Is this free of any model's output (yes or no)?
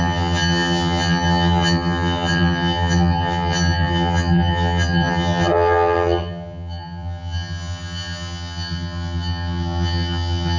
no